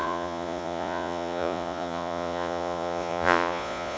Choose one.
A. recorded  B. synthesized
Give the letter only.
B